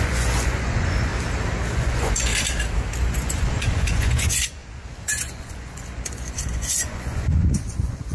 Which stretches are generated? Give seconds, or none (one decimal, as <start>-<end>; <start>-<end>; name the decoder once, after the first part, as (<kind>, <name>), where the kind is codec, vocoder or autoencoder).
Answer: 0.0-1.1 (vocoder, Vocos); 1.7-2.3; 3.0-8.1